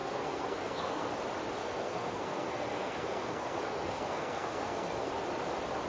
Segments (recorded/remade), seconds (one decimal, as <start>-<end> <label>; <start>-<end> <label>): 0.0-1.1 remade; 1.1-1.6 recorded; 1.6-5.1 remade; 5.1-5.9 recorded